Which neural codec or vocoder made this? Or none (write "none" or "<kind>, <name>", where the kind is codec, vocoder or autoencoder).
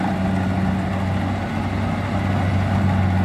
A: none